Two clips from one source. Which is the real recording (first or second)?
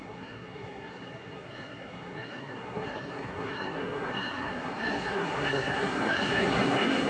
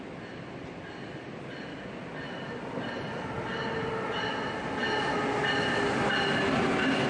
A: second